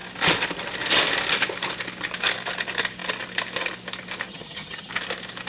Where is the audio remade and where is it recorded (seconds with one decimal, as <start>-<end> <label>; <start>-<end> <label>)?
0.0-4.3 recorded; 4.3-4.9 remade; 4.9-5.5 recorded